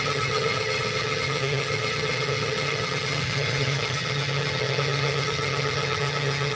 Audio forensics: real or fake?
fake